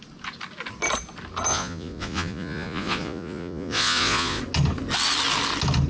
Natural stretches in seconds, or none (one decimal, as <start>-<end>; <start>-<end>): 0.0-1.5; 4.4-5.9